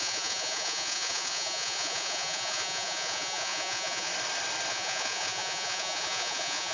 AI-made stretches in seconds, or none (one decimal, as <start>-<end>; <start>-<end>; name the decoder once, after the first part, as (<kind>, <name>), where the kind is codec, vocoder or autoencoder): 0.0-4.1 (vocoder, Vocos); 4.7-6.7